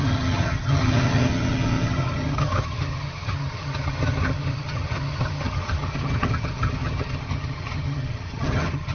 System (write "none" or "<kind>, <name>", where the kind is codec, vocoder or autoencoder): vocoder, HiFi-GAN